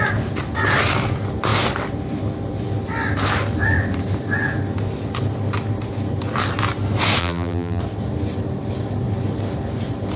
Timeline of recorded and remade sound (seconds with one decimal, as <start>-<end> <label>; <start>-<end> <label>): 0.0-7.2 recorded; 7.2-7.8 remade; 7.8-10.2 recorded